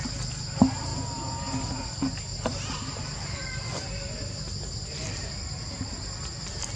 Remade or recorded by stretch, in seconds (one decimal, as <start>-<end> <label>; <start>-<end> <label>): 0.0-2.3 recorded; 2.3-4.5 remade; 4.5-6.8 recorded